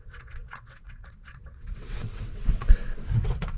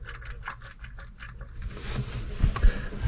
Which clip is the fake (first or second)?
first